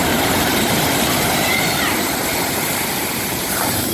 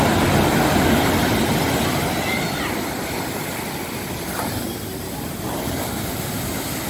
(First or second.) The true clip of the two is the second